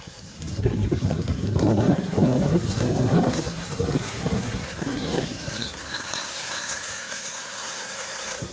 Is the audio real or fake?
fake